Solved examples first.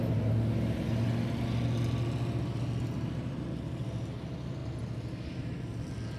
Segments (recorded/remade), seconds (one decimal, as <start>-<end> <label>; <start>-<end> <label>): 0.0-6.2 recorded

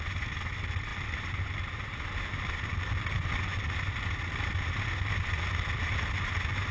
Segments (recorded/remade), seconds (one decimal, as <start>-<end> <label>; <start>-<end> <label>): 0.0-6.7 recorded

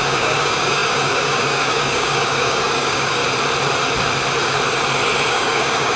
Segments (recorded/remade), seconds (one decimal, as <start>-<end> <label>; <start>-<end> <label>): 0.0-3.2 remade; 3.2-5.3 recorded; 5.3-6.0 remade

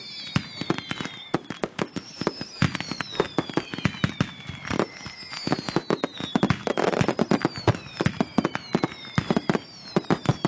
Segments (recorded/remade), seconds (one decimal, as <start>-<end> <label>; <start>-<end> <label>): 0.0-10.5 recorded

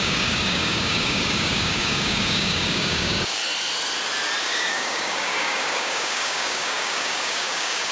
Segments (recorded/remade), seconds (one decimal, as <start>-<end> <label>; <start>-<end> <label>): 0.0-3.4 remade; 3.4-4.4 recorded; 4.4-7.9 remade

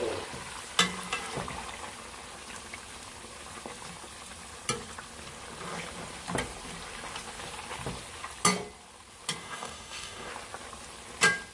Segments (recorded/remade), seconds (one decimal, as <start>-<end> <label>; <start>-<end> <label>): 0.0-9.4 recorded; 9.4-10.3 remade; 10.3-11.5 recorded